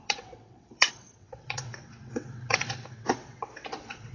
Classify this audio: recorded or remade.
remade